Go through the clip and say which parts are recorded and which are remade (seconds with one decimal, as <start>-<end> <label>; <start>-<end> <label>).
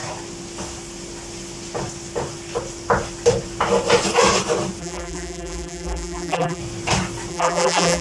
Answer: 0.0-4.8 recorded; 4.8-6.6 remade; 6.6-7.3 recorded; 7.3-8.0 remade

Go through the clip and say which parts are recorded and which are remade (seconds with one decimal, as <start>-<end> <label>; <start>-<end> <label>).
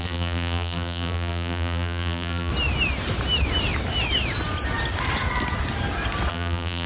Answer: 0.0-2.5 remade; 2.5-6.3 recorded; 6.3-6.9 remade